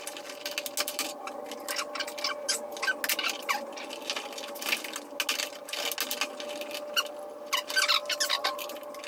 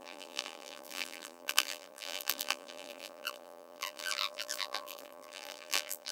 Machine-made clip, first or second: second